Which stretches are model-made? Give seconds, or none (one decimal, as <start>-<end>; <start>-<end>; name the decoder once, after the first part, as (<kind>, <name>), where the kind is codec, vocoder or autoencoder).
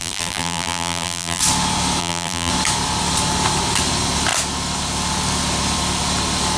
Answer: 0.0-1.4 (vocoder, BigVGAN v2); 2.0-2.5